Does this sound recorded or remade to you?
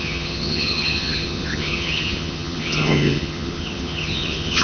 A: remade